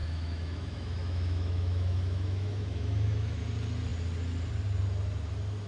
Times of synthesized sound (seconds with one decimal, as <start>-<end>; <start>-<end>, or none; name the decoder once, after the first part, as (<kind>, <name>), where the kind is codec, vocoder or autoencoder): 0.0-3.4 (autoencoder, DAC-VAE)